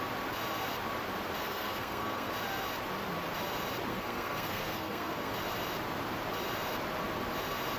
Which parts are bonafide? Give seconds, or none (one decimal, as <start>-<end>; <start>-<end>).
0.0-1.4; 2.3-3.9; 5.3-7.8